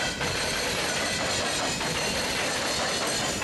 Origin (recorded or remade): recorded